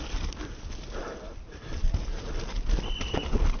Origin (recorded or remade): recorded